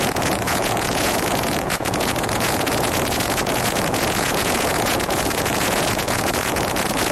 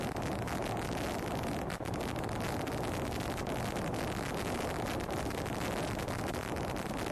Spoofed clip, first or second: first